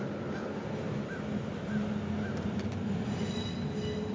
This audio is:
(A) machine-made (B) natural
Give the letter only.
B